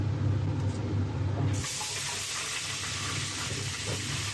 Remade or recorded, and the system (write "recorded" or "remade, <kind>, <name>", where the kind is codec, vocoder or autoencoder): recorded